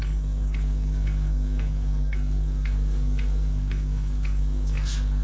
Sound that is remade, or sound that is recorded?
remade